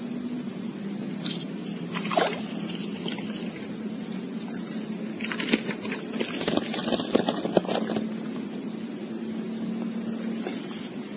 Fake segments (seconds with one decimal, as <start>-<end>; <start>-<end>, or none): none